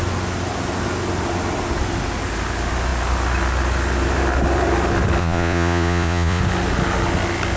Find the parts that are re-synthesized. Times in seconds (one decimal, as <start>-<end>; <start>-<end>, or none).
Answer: 5.2-6.4